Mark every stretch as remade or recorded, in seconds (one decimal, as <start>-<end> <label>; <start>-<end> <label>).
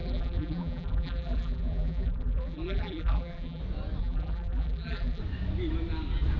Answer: 0.0-3.6 remade; 3.6-4.0 recorded; 4.0-5.2 remade; 5.2-6.4 recorded